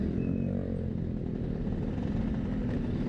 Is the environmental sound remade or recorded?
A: recorded